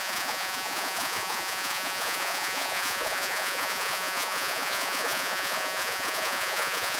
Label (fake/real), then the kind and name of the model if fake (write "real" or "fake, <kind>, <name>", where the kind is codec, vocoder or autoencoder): fake, vocoder, Vocos